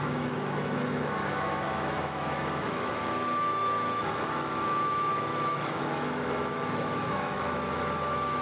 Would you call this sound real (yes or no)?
no